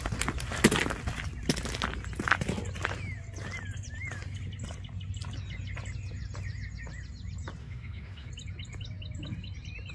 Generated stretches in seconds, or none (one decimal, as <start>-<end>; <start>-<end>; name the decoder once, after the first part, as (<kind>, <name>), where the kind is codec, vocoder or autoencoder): 7.6-8.3 (autoencoder, DAC-VAE)